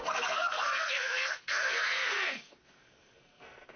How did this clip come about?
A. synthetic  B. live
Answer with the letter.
A